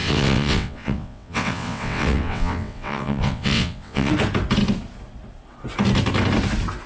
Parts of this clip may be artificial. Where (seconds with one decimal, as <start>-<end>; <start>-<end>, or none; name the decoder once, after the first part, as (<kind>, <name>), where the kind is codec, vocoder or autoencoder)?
0.0-4.1 (vocoder, WaveNeXt)